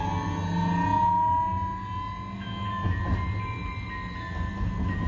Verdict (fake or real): real